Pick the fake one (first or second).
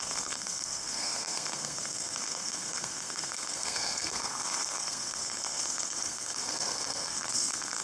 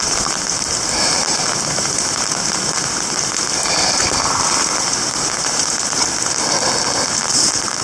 first